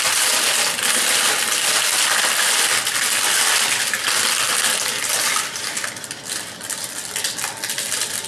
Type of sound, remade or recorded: recorded